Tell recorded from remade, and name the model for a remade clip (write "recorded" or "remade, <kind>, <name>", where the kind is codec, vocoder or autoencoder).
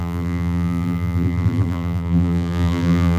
remade, vocoder, BigVGAN v2